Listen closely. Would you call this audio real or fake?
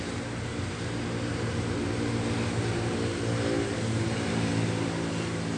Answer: real